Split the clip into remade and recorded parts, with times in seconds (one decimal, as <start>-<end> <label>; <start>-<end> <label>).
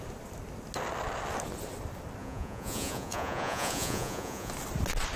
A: 0.0-2.2 recorded; 2.2-4.5 remade; 4.5-5.2 recorded